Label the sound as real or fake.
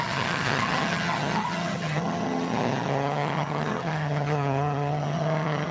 fake